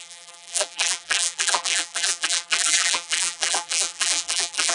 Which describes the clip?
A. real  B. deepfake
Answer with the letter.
B